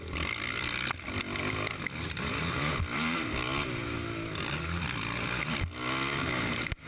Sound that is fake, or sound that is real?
real